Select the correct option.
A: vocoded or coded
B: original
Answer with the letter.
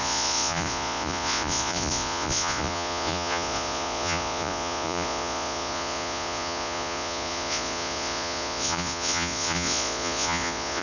A